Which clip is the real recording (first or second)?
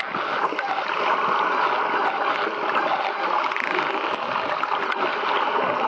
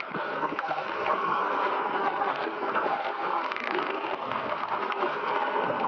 first